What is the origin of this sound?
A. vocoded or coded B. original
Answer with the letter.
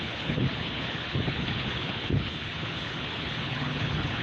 A